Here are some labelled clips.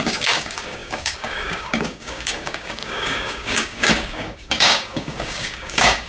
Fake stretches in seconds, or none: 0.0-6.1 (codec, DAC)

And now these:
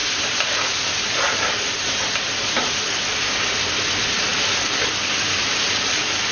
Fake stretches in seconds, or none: 0.0-3.0 (vocoder, BigVGAN v2)

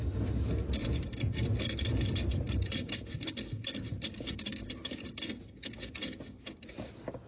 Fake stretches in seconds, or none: 0.8-5.2 (vocoder, BigVGAN v2)

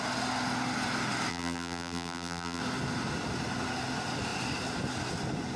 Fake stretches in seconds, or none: 1.3-2.6 (vocoder, BigVGAN v2)

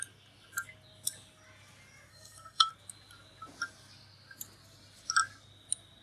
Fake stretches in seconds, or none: 2.1-2.7 (codec, SNAC)

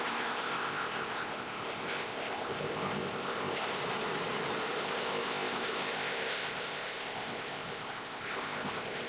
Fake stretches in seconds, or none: 0.0-3.8 (codec, ZipCodec); 4.8-9.1

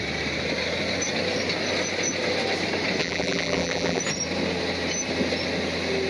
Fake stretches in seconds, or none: 3.0-4.0 (vocoder, BigVGAN v2)